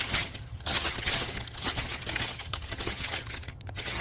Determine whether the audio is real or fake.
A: fake